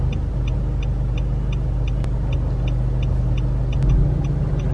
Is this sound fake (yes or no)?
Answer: no